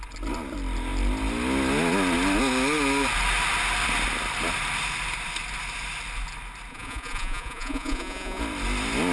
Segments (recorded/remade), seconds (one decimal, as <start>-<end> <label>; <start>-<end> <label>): 0.0-6.7 recorded; 6.7-8.4 remade; 8.4-9.1 recorded

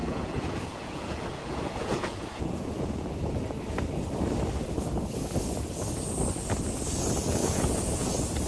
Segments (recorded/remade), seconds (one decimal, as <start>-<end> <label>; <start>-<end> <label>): 0.0-3.1 remade; 3.1-7.4 recorded; 7.4-8.1 remade; 8.1-8.5 recorded

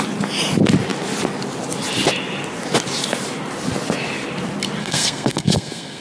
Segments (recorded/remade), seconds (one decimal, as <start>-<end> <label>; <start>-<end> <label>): 0.0-4.8 recorded; 4.8-6.0 remade